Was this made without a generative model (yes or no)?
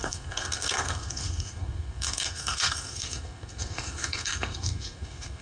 no